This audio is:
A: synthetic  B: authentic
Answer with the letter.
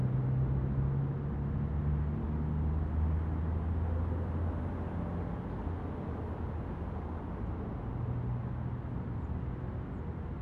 B